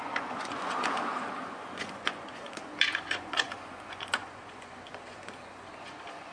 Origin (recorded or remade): remade